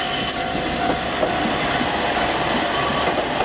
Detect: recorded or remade recorded